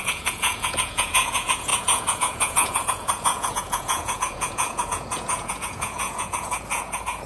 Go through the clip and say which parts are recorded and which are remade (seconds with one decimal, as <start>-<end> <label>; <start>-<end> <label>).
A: 0.0-7.3 remade